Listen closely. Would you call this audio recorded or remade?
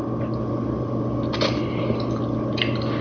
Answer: recorded